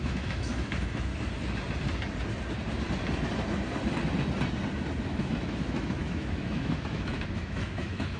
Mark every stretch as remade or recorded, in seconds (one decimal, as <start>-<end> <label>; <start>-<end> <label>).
0.0-1.1 remade; 1.1-5.0 recorded; 5.0-8.2 remade